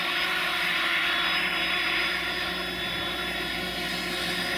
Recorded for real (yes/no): yes